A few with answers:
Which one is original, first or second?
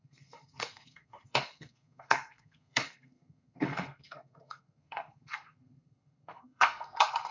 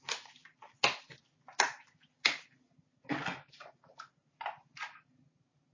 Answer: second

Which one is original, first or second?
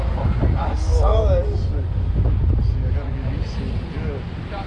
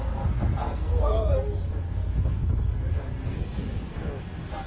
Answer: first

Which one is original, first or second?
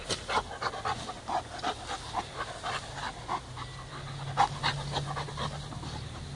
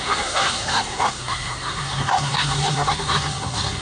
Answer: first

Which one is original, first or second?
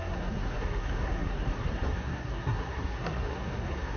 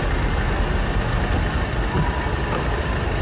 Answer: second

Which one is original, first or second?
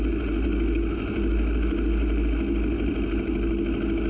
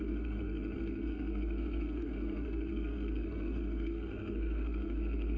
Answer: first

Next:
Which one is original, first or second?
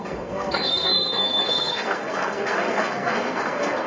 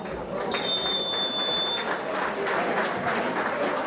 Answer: second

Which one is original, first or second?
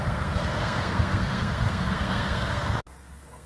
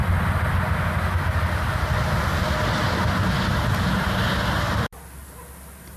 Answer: second